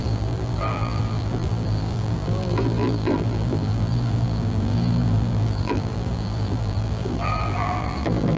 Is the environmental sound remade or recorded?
remade